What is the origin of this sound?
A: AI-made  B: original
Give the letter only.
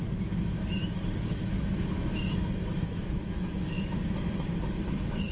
A